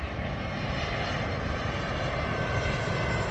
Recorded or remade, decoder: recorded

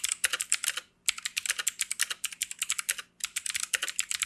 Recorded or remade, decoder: recorded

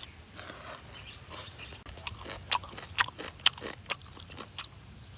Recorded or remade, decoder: recorded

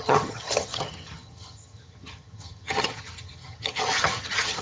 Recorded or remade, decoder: remade, vocoder, HiFi-GAN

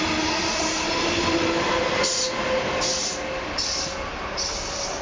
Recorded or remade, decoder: recorded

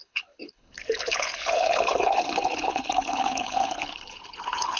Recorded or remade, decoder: remade, codec, HILCodec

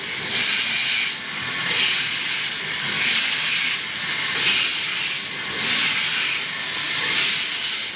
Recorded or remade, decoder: recorded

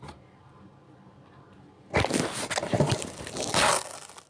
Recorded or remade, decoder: recorded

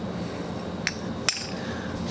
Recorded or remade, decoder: recorded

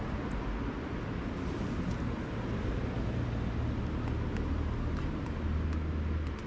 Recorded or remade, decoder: recorded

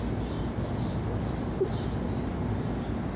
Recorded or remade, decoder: remade, vocoder, BigVGAN v2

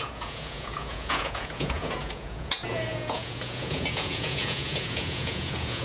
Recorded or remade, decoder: remade, vocoder, Vocos